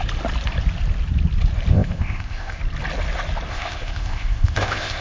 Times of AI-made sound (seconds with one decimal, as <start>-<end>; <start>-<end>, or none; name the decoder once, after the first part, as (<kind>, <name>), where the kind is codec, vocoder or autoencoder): 1.7-2.6 (codec, ZipCodec); 3.5-5.0